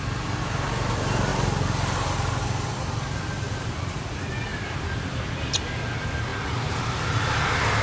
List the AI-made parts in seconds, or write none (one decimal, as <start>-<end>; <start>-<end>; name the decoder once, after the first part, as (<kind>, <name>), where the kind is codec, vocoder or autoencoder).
4.5-5.5 (vocoder, BigVGAN v2); 6.3-6.9